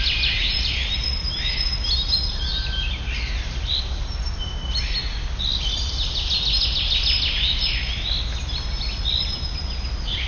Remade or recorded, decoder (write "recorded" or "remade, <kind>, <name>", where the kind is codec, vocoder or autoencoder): recorded